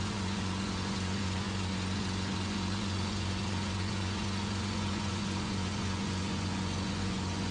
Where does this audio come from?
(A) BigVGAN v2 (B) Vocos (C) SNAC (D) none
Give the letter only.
B